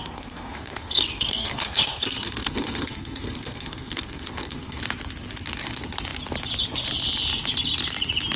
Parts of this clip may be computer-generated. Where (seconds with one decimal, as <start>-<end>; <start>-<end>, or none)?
0.0-4.8